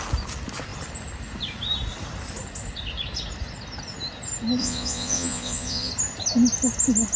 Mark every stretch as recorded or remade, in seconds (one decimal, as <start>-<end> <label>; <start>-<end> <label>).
0.0-4.6 recorded; 4.6-5.9 remade; 5.9-7.2 recorded